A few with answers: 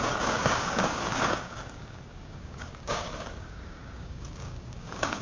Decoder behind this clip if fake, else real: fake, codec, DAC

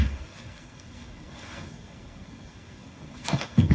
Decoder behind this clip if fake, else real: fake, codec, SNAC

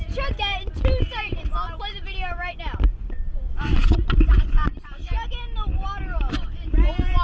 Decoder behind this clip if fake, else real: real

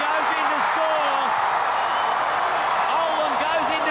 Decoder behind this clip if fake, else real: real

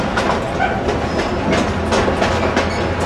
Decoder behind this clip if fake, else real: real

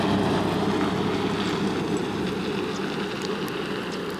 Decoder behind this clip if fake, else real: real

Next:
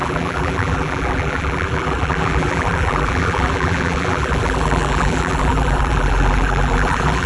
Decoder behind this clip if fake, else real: fake, vocoder, BigVGAN v2